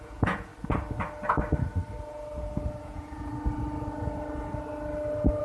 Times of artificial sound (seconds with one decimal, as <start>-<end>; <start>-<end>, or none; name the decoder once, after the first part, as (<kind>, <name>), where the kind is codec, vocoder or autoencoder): 0.0-0.5 (vocoder, Vocos); 2.8-3.3